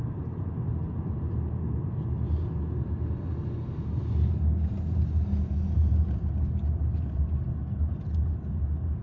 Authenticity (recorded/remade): recorded